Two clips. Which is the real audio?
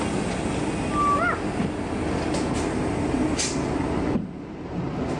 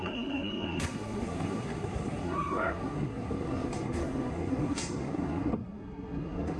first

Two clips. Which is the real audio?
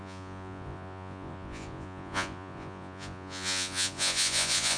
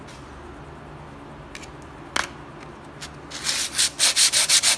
second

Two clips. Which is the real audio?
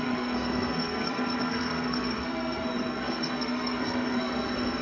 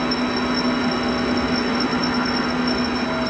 second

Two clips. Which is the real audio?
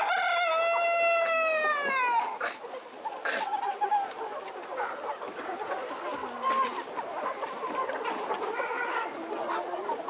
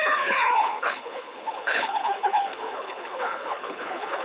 first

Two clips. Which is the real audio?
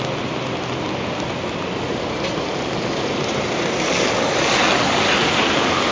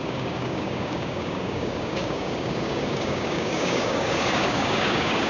first